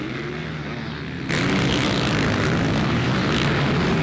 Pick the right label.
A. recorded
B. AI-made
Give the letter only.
A